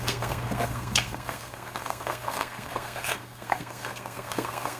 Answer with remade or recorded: remade